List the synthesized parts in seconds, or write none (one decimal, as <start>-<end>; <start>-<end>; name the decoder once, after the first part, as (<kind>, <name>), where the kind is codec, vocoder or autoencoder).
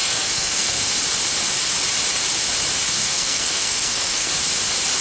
0.0-0.9 (codec, SNAC); 3.0-4.3